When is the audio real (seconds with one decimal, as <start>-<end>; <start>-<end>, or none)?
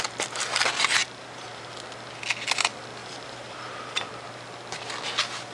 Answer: 0.0-1.0; 1.7-3.0; 3.8-5.5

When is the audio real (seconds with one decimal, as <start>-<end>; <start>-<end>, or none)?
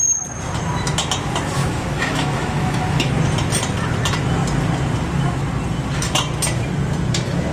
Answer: 0.0-1.6; 3.1-7.5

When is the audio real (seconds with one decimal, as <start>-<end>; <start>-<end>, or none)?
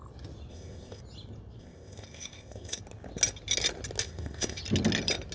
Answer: 0.0-0.5; 1.0-1.6; 2.8-4.0; 4.6-5.3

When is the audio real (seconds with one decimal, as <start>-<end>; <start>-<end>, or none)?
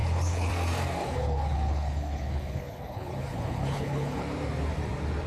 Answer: 0.5-1.0; 4.2-5.3